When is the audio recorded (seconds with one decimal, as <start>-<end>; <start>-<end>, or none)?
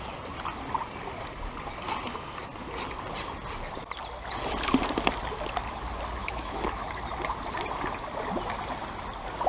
0.0-6.2; 6.8-9.5